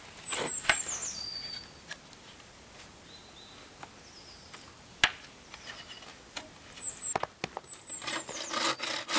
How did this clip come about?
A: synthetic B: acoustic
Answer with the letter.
B